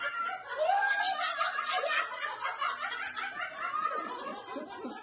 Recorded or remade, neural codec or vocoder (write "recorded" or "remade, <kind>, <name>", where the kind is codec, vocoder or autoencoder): recorded